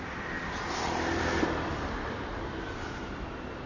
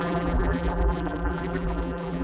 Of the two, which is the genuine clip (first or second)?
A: first